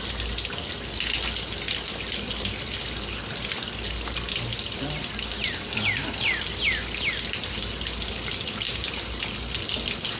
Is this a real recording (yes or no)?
yes